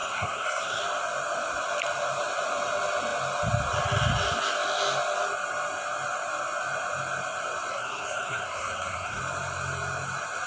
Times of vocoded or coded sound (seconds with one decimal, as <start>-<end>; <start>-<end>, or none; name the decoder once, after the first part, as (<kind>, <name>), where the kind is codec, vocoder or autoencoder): 0.0-0.8 (codec, SNAC); 7.7-9.2